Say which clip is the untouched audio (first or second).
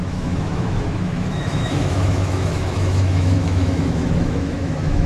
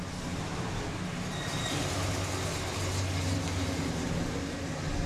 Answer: second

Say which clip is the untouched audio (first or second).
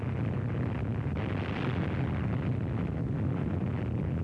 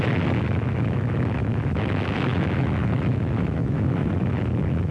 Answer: first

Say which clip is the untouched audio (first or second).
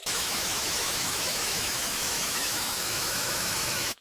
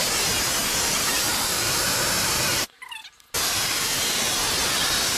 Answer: second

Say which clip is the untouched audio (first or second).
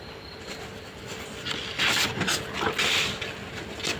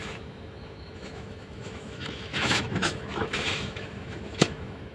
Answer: first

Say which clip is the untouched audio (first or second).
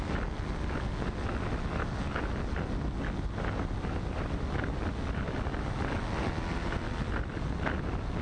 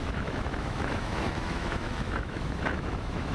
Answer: first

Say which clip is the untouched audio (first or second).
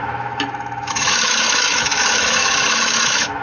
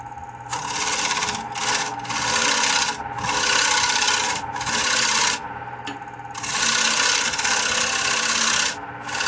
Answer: second